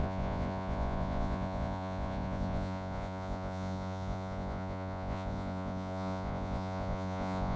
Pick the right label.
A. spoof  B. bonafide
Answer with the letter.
A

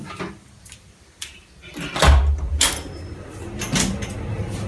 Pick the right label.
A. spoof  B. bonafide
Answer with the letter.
B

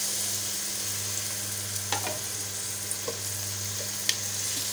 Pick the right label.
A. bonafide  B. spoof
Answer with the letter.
A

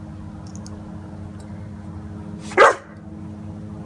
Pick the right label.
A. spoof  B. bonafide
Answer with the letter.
B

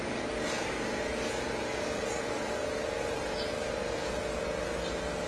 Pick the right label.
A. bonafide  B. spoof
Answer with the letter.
A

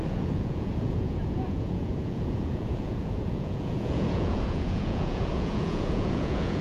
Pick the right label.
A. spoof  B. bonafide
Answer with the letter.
A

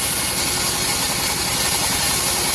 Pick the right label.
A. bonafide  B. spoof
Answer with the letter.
A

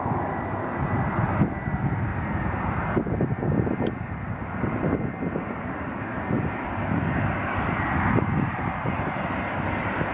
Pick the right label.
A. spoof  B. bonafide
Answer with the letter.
B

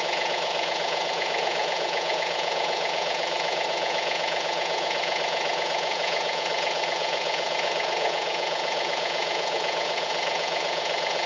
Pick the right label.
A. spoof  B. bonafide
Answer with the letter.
A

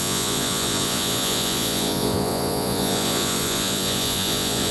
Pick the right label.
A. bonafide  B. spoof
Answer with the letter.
B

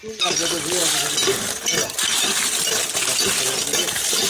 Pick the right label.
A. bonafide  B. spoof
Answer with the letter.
A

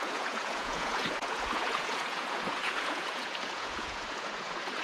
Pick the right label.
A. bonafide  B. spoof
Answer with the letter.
B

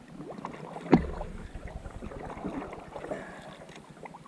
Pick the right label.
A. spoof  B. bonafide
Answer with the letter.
B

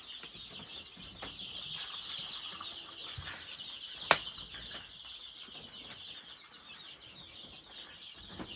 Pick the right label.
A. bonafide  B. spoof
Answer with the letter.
A